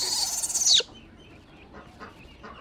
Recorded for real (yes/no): yes